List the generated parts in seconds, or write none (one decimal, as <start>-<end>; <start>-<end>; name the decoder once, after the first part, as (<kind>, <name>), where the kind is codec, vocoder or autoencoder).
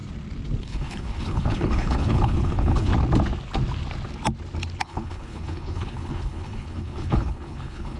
0.6-2.9 (codec, HILCodec); 4.8-8.0